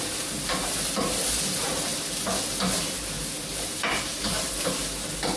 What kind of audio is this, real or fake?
real